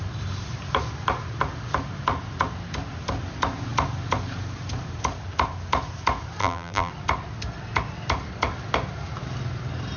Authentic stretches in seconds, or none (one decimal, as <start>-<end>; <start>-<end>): 0.0-6.4; 6.9-10.0